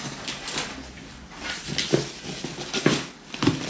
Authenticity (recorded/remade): recorded